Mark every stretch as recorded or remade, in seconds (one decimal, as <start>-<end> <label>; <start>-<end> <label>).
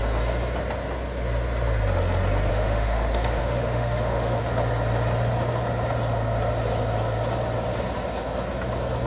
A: 0.0-2.5 recorded; 2.5-4.4 remade; 4.4-9.1 recorded